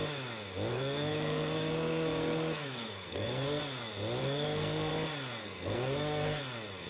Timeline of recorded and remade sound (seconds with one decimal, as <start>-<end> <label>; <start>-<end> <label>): 0.0-0.7 recorded; 0.7-3.6 remade; 3.6-4.2 recorded; 4.2-4.9 remade; 4.9-5.4 recorded; 5.4-6.4 remade; 6.4-6.9 recorded